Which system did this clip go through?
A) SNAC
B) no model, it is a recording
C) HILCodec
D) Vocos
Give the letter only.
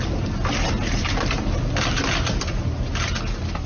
B